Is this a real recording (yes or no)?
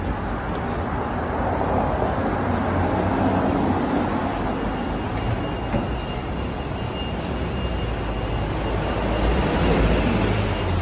yes